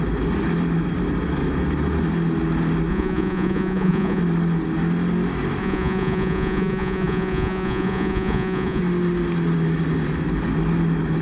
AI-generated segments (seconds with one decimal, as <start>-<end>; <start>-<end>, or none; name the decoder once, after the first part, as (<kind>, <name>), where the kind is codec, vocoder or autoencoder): 2.9-4.2 (vocoder, Vocos); 5.6-8.8